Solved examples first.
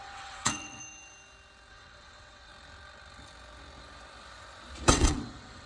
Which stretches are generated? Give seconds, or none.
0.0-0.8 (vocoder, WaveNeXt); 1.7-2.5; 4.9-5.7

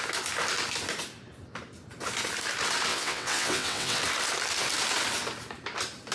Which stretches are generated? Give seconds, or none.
2.9-4.0 (vocoder, WaveNeXt)

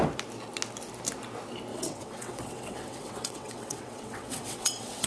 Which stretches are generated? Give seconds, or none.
1.7-5.1 (vocoder, WaveNeXt)

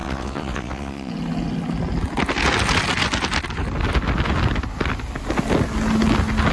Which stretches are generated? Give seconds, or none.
0.0-1.1 (vocoder, WaveNeXt)

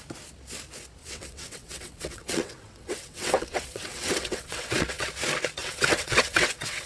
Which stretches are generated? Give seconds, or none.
1.0-5.1 (vocoder, WaveNeXt); 5.6-6.9

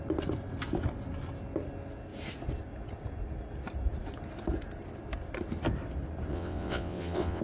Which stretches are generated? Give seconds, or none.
6.3-7.4 (vocoder, WaveNeXt)

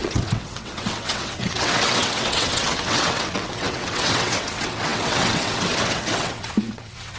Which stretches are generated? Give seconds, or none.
0.0-7.2 (vocoder, WaveNeXt)